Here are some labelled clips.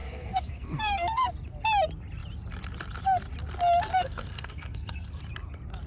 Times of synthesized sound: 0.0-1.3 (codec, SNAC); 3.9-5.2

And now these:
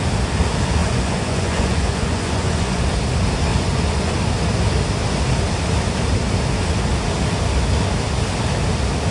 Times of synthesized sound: 0.8-2.8 (vocoder, Vocos); 3.5-4.1